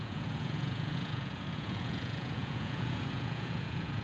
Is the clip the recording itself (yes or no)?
no